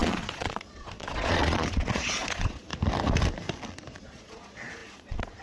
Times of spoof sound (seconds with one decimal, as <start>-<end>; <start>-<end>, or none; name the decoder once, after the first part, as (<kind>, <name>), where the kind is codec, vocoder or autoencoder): 0.0-2.7 (vocoder, Vocos); 4.0-5.4